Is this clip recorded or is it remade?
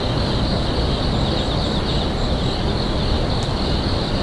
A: recorded